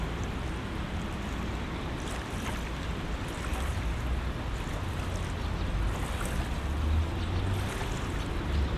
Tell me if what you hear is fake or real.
real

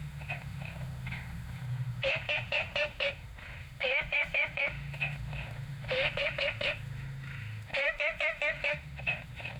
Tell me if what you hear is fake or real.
fake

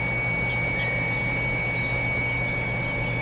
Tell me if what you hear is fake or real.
real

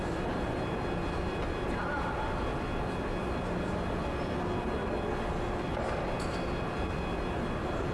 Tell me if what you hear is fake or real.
real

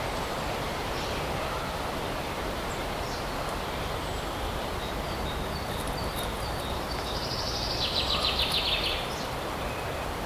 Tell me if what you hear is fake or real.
fake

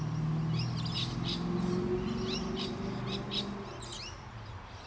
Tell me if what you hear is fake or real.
real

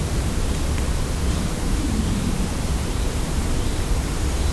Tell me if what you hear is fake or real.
fake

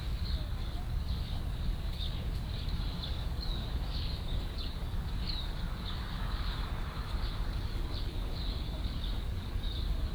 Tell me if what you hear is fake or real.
fake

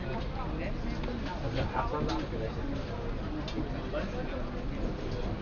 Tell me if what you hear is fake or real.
real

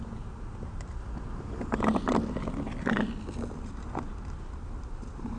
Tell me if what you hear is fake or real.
real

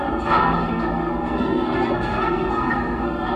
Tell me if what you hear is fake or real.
fake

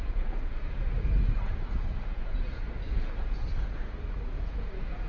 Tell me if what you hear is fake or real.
fake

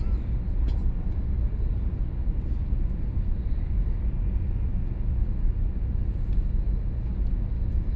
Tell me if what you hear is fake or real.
real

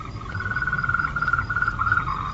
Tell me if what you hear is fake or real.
real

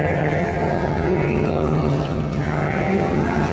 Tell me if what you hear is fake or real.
fake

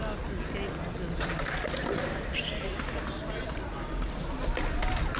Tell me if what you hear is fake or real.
real